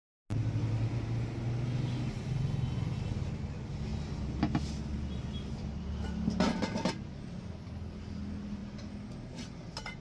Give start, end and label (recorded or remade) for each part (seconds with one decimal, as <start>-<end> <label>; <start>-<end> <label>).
0.0-10.0 recorded